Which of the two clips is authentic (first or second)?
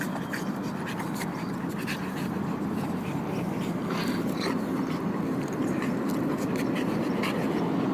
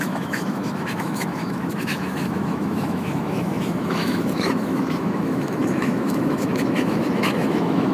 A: first